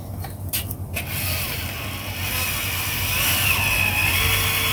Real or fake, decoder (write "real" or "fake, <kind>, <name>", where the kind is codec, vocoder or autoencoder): real